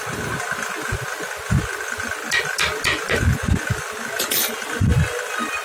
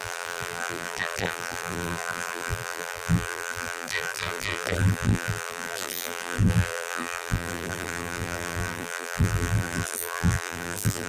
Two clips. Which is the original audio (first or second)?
first